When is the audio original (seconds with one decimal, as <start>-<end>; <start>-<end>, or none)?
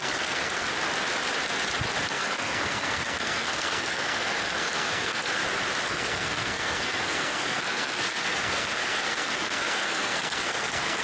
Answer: 0.7-2.1; 5.4-5.9